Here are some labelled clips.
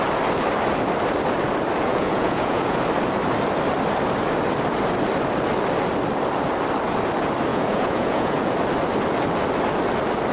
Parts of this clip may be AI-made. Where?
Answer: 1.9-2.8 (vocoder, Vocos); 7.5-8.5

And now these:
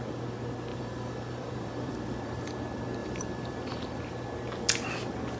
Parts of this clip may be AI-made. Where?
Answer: 0.7-2.5 (vocoder, BigVGAN v2); 3.0-4.0

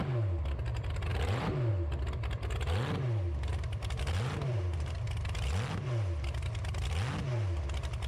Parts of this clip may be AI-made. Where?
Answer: 1.1-1.7 (vocoder, BigVGAN v2); 3.5-5.5